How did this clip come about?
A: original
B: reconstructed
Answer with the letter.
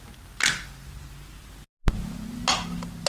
A